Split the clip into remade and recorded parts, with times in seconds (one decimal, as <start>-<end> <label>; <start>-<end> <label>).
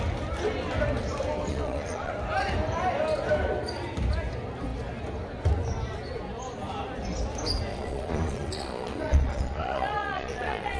0.0-1.5 recorded; 1.5-2.1 remade; 2.1-7.7 recorded; 7.7-10.8 remade